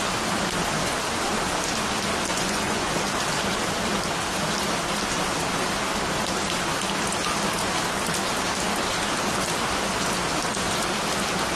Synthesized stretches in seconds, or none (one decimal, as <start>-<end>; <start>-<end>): 2.3-2.9